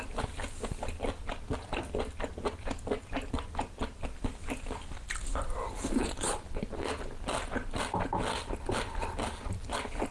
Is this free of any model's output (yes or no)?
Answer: yes